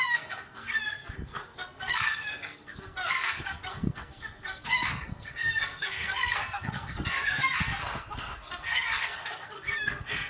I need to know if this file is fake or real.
fake